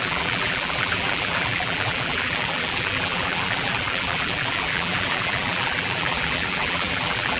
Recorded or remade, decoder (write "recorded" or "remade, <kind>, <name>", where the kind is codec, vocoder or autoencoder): remade, vocoder, BigVGAN v2